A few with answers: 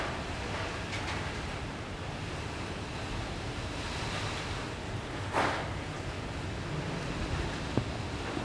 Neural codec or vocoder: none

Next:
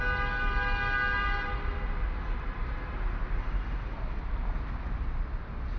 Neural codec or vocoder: none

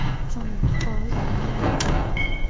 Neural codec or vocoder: autoencoder, DAC-VAE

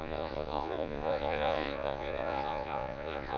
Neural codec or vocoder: vocoder, Vocos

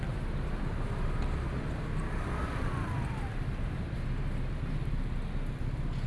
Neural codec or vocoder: none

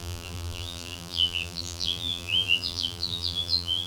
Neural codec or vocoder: vocoder, BigVGAN v2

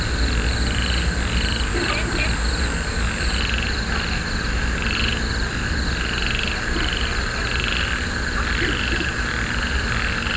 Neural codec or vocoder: none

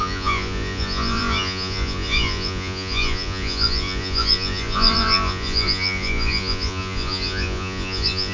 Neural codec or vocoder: vocoder, Vocos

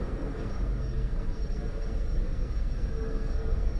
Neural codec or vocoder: codec, SNAC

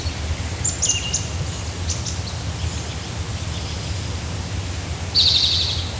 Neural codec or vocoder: none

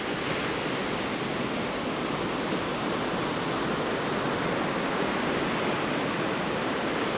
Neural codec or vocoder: none